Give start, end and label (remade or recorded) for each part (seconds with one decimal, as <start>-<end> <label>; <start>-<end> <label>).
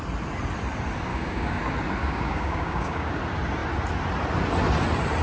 0.0-1.1 recorded; 1.1-1.6 remade; 1.6-2.0 recorded; 2.0-3.1 remade; 3.1-5.2 recorded